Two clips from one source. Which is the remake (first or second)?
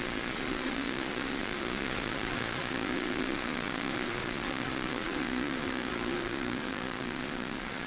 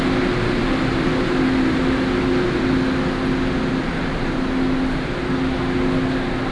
first